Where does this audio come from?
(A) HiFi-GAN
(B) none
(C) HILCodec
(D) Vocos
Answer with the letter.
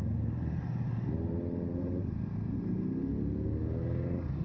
B